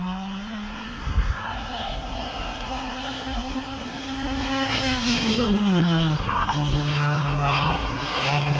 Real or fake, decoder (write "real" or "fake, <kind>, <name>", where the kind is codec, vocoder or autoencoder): fake, codec, SNAC